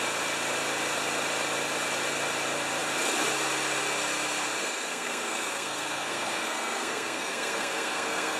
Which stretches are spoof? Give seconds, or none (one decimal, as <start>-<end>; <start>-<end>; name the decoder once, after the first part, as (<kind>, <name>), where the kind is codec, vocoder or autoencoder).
4.6-8.4 (codec, SNAC)